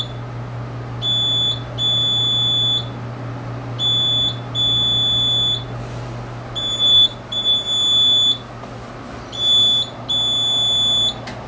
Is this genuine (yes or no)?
yes